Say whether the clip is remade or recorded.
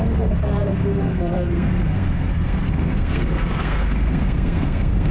remade